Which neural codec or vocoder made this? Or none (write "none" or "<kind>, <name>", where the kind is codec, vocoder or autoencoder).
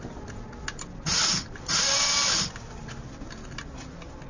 none